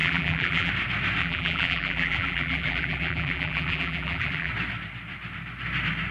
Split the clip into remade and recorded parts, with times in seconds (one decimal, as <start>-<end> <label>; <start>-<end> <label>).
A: 0.0-0.7 remade; 0.7-1.2 recorded; 1.2-4.5 remade; 4.5-6.1 recorded